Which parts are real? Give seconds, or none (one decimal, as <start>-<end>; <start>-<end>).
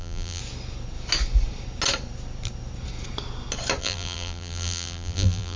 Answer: 0.4-3.8